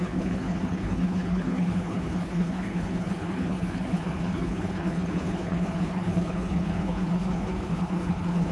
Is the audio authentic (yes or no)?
no